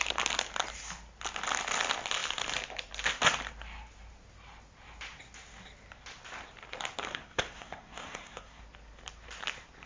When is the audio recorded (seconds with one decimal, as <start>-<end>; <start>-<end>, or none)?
0.0-7.1; 8.6-9.9